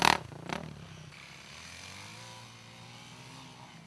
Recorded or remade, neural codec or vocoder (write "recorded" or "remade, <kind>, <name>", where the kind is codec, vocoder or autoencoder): recorded